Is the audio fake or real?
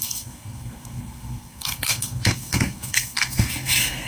fake